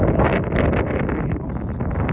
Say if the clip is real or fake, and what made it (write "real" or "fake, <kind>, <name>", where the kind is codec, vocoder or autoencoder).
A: real